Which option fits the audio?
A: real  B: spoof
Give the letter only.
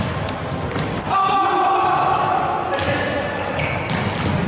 A